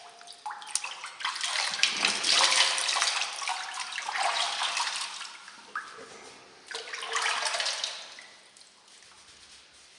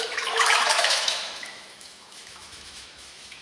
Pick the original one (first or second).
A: first